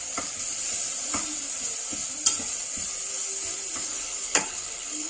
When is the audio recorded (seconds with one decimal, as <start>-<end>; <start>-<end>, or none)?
0.0-3.9